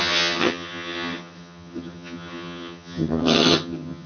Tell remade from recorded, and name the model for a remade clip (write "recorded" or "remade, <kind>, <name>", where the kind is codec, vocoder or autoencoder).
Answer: remade, vocoder, HiFi-GAN